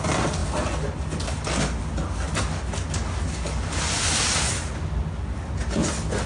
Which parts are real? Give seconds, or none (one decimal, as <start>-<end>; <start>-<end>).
0.0-6.3